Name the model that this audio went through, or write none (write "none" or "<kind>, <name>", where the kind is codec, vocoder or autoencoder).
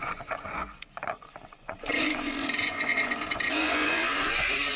vocoder, Vocos